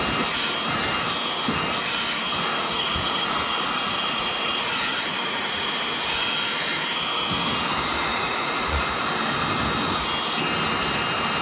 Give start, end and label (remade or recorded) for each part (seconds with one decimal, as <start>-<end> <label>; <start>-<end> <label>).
0.0-2.5 recorded; 2.5-5.7 remade; 5.7-8.1 recorded; 8.1-9.0 remade; 9.0-11.4 recorded